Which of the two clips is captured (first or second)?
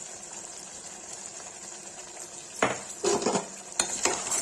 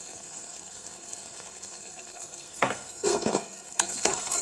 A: first